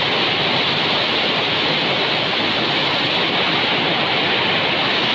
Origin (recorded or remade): recorded